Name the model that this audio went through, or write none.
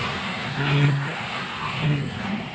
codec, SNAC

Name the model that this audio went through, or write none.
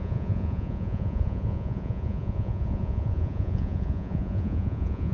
vocoder, Vocos